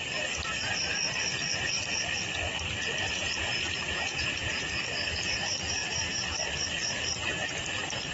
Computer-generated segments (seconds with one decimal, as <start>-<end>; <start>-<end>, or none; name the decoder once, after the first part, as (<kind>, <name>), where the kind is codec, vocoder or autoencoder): 3.2-4.6 (vocoder, Vocos)